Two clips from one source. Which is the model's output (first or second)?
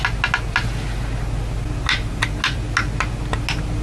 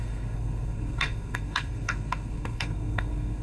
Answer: second